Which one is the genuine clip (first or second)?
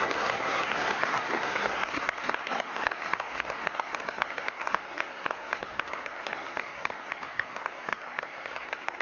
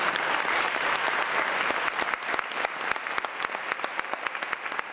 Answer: second